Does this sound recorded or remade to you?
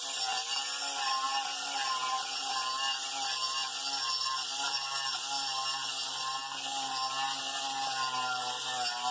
recorded